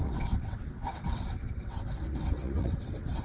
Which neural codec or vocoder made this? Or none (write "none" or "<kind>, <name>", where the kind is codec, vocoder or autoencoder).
vocoder, WaveNeXt